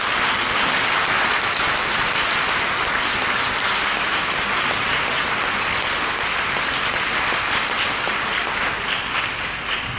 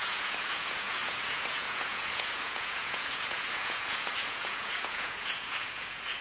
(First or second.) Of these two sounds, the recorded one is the first